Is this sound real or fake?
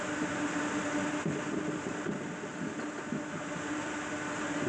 real